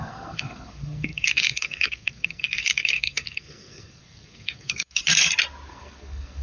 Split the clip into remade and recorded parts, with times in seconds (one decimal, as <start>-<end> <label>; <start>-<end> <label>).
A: 0.0-5.0 remade; 5.0-5.7 recorded; 5.7-6.4 remade